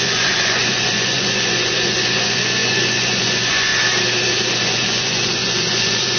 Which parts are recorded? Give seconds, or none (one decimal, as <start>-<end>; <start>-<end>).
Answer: 3.7-4.5